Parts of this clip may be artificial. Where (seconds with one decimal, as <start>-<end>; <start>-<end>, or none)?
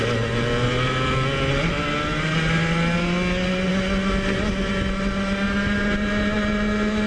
none